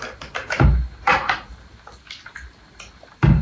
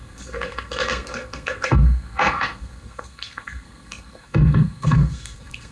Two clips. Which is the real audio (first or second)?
first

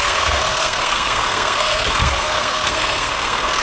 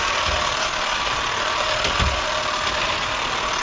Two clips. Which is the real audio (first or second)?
second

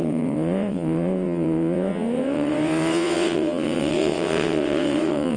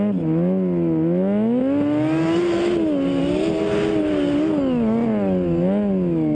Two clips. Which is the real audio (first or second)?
second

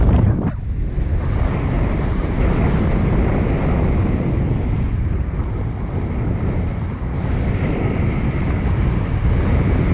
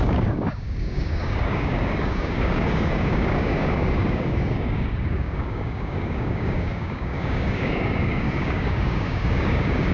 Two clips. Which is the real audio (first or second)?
first